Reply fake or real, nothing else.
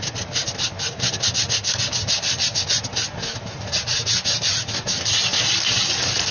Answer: real